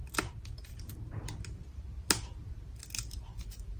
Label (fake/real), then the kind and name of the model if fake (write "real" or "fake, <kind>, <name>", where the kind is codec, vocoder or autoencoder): fake, vocoder, BigVGAN v2